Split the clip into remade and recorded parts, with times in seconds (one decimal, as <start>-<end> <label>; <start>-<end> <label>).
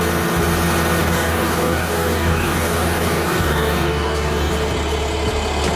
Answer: 0.0-1.0 recorded; 1.0-4.5 remade; 4.5-5.8 recorded